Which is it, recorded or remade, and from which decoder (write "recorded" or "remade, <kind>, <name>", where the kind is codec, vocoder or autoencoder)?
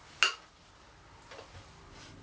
recorded